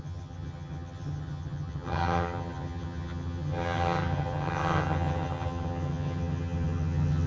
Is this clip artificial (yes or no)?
yes